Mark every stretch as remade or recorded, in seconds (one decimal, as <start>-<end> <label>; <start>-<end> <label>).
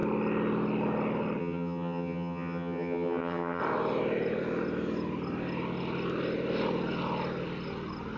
0.0-1.4 recorded; 1.4-3.6 remade; 3.6-8.2 recorded